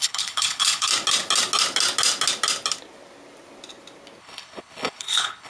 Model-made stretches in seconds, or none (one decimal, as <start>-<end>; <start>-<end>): 0.0-0.9; 4.2-5.5